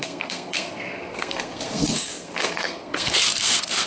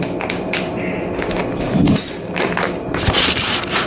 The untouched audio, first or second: second